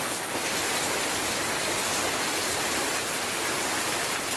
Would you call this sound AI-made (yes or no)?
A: no